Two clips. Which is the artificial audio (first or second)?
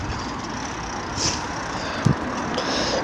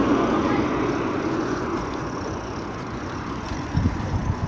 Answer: second